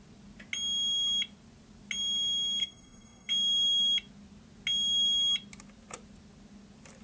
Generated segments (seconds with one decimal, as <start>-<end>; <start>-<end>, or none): 2.6-3.3